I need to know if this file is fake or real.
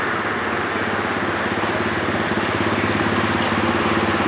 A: real